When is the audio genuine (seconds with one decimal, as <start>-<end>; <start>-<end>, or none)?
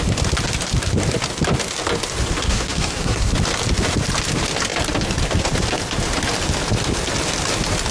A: 0.0-2.4; 3.3-7.9